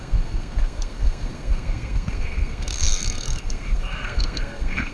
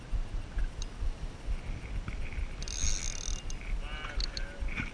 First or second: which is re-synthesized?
first